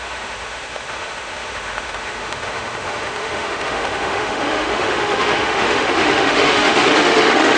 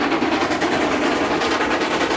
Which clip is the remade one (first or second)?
first